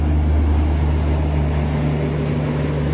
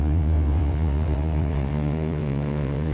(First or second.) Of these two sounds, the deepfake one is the second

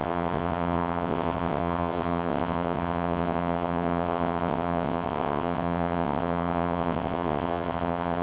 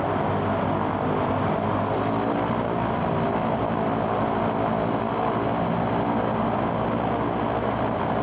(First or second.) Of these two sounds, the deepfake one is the first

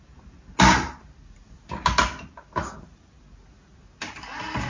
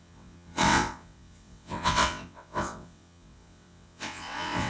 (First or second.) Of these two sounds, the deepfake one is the second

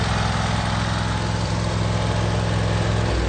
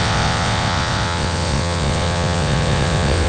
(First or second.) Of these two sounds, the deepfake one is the second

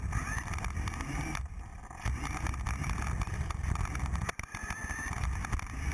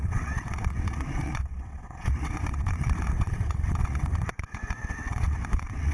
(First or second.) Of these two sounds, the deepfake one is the second